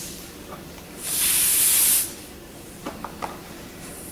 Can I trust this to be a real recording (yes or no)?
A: yes